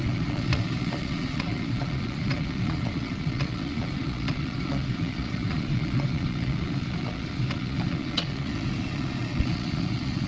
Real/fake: fake